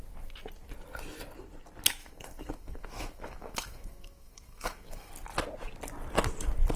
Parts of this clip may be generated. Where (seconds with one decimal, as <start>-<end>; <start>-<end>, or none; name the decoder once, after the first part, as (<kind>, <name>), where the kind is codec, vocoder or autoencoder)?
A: 2.0-5.1 (autoencoder, DAC-VAE)